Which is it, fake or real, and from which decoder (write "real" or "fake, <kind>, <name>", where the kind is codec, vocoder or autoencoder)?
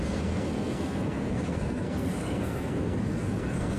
fake, codec, SNAC